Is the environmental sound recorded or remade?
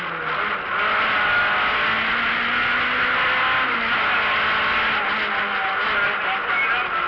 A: recorded